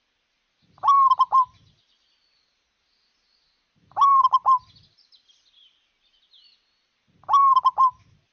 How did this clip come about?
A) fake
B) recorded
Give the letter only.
B